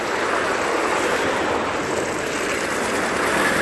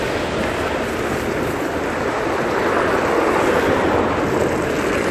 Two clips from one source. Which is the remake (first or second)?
first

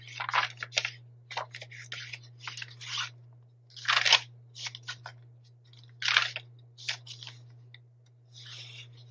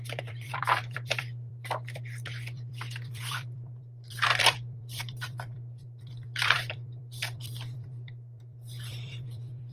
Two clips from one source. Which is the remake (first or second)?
second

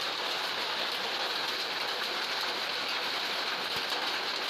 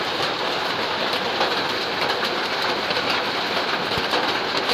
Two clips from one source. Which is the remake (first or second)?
second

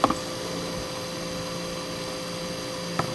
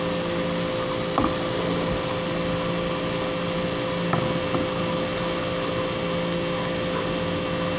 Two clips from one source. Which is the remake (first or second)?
first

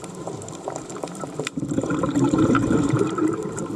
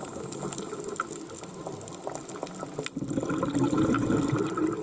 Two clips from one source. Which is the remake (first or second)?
first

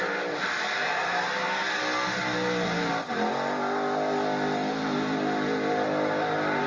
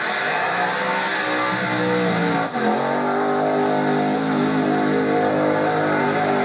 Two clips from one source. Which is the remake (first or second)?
first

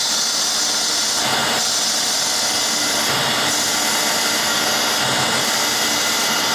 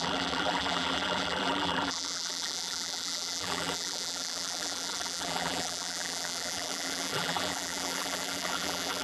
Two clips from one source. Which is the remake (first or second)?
second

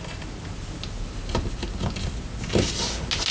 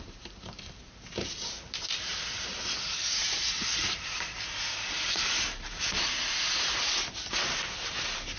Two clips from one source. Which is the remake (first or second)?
second